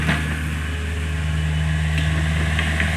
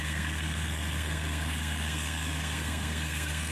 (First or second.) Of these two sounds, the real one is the first